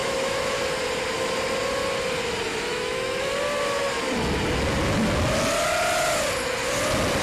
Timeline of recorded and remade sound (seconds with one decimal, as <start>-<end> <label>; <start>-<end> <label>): 0.0-0.6 remade; 0.6-2.5 recorded; 2.5-3.3 remade; 3.3-7.2 recorded

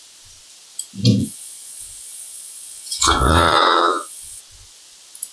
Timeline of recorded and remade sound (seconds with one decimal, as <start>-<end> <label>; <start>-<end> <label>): 0.0-1.2 recorded; 1.2-4.4 remade; 4.4-5.3 recorded

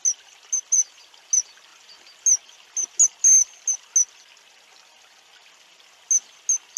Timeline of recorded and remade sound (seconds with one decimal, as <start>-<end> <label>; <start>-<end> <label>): 0.0-6.8 recorded

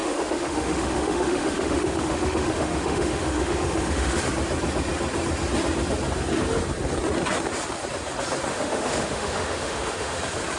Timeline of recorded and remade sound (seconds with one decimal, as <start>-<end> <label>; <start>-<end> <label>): 0.0-4.2 remade; 4.2-8.5 recorded; 8.5-10.2 remade; 10.2-10.6 recorded

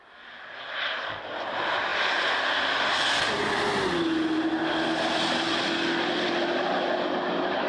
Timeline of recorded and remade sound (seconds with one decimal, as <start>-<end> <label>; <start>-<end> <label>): 0.0-7.7 recorded

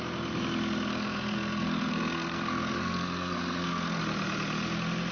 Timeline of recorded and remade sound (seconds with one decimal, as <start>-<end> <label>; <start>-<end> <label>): 0.0-0.9 recorded; 0.9-4.0 remade; 4.0-5.1 recorded

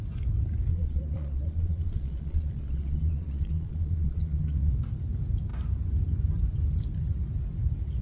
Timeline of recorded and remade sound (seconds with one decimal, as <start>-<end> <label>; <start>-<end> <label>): 0.0-0.7 recorded; 0.7-4.7 remade; 4.7-8.0 recorded

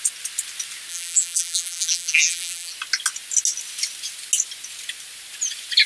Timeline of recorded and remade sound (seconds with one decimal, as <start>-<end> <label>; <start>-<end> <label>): 0.0-0.9 recorded; 0.9-2.7 remade; 2.7-5.9 recorded